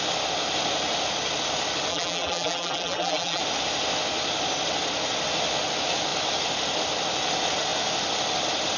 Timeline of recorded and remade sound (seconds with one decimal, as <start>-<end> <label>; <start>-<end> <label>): 0.0-1.9 recorded; 1.9-3.4 remade; 3.4-8.8 recorded